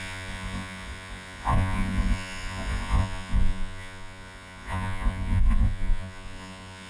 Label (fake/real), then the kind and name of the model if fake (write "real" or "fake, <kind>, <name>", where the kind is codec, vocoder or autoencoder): fake, vocoder, Vocos